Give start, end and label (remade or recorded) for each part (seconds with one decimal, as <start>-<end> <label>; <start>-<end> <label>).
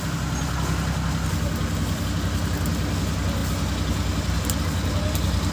0.0-5.5 recorded